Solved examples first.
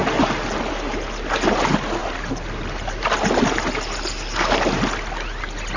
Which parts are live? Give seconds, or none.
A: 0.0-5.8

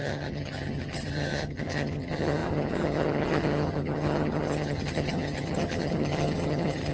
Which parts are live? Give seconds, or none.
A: none

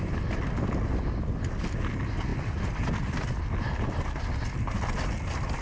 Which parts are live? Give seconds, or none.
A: 0.0-5.6

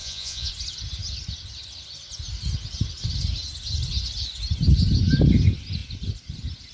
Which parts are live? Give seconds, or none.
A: 0.5-6.7